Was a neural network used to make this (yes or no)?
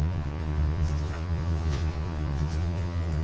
yes